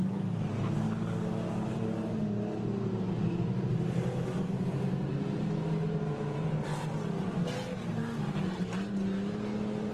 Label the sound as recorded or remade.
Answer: recorded